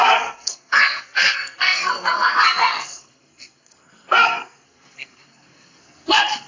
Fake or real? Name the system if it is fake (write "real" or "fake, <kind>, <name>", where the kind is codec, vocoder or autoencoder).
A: fake, codec, SNAC